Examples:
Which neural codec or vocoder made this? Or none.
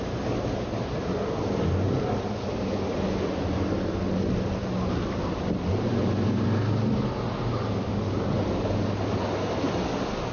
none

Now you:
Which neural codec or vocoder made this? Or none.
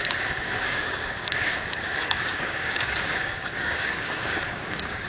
codec, DAC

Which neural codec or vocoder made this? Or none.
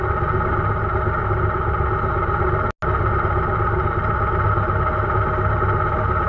none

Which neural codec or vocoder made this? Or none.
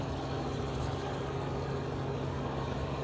codec, DAC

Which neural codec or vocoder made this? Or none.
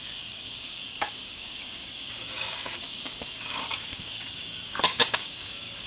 codec, DAC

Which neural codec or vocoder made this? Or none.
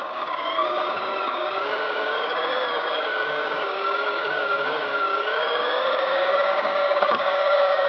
codec, DAC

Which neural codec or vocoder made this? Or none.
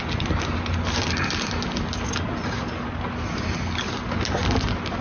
none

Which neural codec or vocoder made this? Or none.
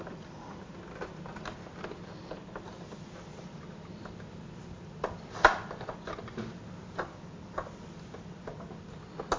none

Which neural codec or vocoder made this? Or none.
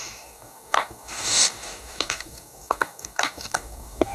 codec, DAC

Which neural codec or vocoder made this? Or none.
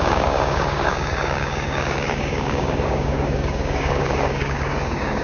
codec, DAC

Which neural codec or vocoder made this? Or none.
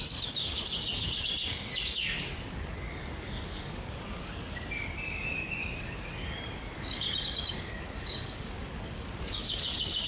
codec, DAC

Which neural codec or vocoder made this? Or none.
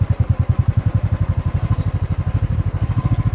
none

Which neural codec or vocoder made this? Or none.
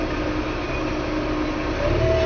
none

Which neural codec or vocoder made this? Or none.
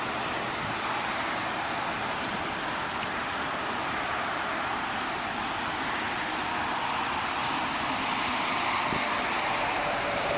none